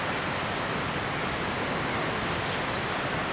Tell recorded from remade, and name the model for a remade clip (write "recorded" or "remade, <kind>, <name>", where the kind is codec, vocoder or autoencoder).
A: recorded